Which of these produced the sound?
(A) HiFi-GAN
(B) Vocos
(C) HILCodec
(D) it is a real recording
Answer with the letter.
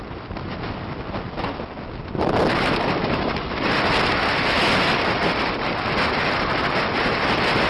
D